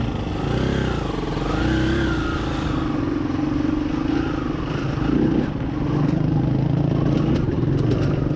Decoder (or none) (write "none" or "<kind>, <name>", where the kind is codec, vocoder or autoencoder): none